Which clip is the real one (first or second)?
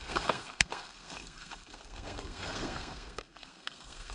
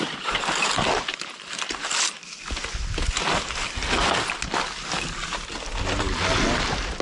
second